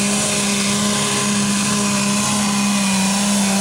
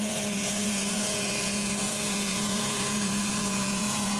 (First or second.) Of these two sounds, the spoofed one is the second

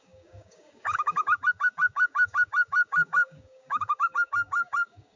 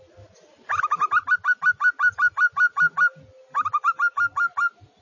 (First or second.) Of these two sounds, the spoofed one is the first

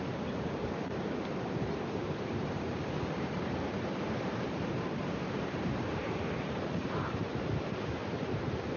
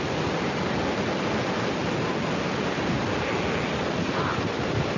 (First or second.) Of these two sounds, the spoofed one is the first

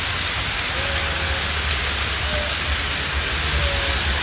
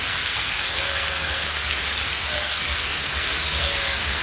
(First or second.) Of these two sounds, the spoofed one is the second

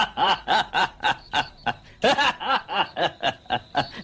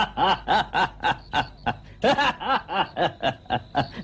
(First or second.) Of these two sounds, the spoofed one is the first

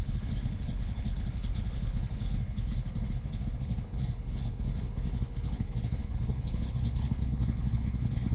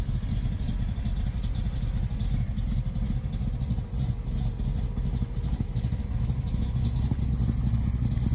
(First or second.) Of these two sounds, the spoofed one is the first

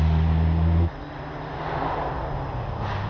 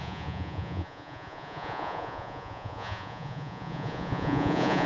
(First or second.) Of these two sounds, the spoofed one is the second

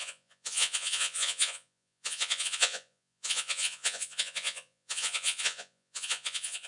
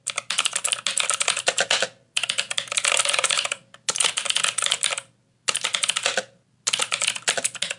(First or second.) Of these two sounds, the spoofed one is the first